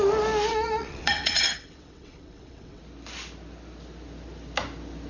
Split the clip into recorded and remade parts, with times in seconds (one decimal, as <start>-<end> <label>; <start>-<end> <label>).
0.0-0.5 recorded; 0.5-2.8 remade; 2.8-5.1 recorded